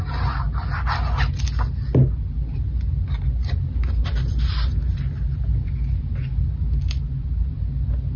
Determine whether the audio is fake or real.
real